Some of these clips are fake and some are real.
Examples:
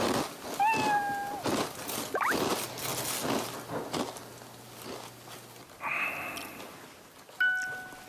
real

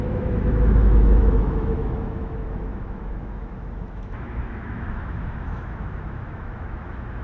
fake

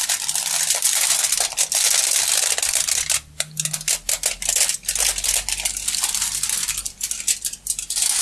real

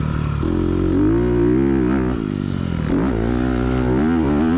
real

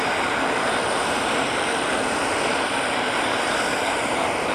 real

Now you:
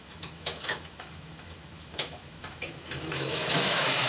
fake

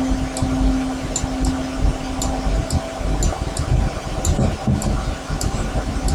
real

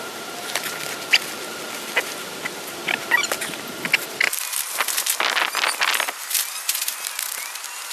real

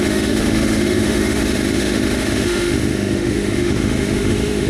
fake